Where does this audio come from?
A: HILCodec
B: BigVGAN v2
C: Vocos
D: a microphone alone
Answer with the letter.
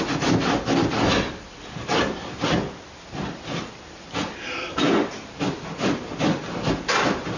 D